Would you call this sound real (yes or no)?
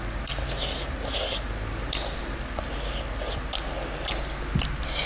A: yes